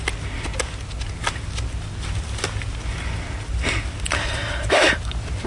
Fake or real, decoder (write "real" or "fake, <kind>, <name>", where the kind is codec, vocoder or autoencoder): real